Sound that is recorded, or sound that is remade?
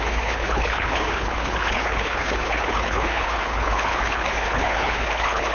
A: remade